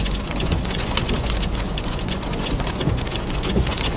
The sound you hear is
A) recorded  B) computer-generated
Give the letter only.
B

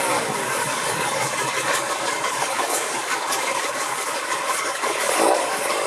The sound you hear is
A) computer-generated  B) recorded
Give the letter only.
A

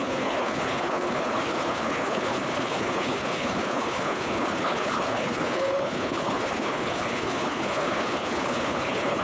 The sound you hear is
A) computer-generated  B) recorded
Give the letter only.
A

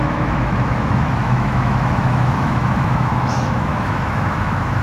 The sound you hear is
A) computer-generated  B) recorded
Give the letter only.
A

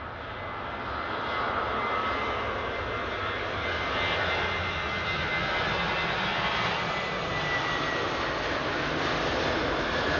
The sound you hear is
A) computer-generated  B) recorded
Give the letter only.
B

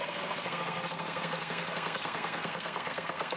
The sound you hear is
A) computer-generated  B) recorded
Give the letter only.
A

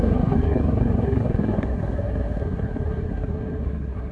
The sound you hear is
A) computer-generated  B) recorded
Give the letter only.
A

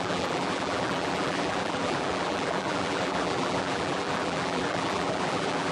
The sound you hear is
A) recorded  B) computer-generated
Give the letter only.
B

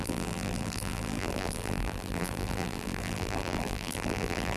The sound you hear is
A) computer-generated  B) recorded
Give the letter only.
A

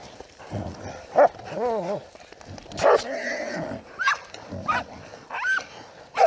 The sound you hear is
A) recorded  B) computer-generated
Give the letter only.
A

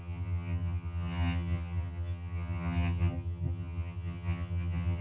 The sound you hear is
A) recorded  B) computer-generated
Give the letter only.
B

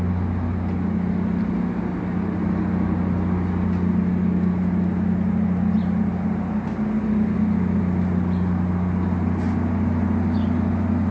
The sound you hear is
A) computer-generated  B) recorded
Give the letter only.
B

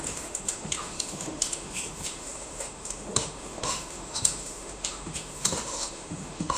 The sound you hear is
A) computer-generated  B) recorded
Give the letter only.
A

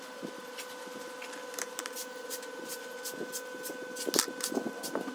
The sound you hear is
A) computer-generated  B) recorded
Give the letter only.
B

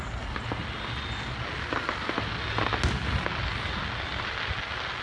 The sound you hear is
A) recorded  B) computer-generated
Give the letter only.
A